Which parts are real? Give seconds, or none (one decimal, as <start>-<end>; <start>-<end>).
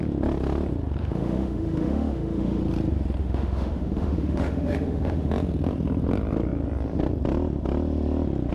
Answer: 0.0-1.0; 2.6-3.2; 5.3-8.5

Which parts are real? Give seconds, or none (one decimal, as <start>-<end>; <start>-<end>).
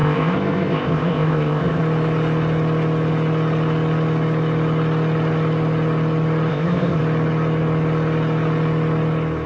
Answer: 1.8-6.5; 7.0-9.5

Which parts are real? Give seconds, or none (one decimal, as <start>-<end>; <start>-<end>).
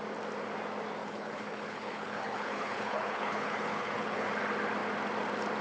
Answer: 0.0-1.0; 4.3-5.6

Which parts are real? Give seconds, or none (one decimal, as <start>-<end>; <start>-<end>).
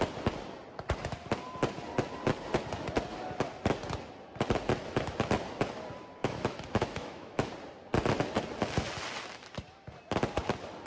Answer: 0.0-6.2; 7.5-10.9